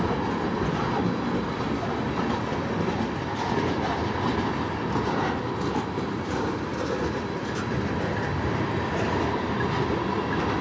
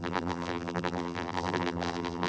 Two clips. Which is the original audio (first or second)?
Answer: first